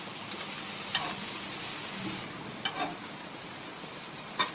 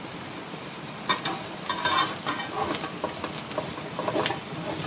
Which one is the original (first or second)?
second